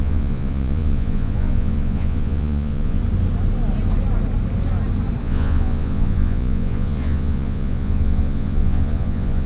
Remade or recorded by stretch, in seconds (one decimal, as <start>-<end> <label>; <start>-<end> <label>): 0.0-3.0 remade; 3.0-5.2 recorded; 5.2-9.5 remade